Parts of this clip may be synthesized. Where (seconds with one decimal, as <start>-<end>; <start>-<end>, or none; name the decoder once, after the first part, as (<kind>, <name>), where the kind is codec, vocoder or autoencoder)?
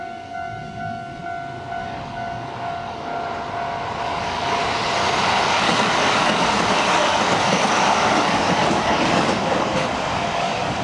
0.0-1.2 (codec, DAC); 1.8-3.1; 4.0-4.6; 5.4-10.8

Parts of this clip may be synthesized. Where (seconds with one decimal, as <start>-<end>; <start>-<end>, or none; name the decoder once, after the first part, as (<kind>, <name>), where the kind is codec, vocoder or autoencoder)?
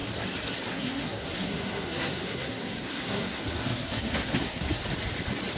0.7-4.8 (codec, SNAC)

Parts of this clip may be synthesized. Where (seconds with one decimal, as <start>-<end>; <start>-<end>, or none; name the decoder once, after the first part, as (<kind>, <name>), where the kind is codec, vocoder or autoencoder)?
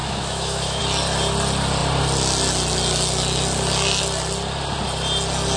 0.0-0.8 (autoencoder, DAC-VAE)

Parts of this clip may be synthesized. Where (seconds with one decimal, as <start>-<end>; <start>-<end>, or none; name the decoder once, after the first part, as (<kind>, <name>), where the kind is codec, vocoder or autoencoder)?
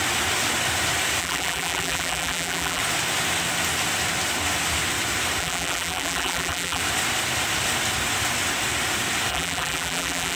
1.2-2.8 (vocoder, BigVGAN v2); 5.4-6.8; 9.3-10.4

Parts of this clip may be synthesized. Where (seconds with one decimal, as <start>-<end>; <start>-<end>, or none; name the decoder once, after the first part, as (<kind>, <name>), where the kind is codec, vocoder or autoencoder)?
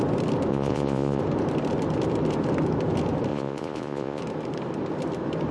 0.5-1.2 (vocoder, Vocos); 3.3-4.2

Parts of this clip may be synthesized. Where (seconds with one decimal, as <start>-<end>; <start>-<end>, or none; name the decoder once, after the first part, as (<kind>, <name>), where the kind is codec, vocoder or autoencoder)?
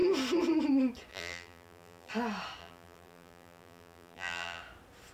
1.1-2.1 (vocoder, BigVGAN v2); 2.6-4.6